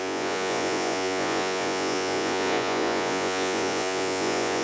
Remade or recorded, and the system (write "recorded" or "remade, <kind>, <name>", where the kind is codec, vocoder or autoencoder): remade, vocoder, Vocos